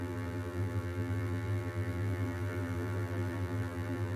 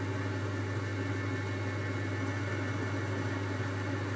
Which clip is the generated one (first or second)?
first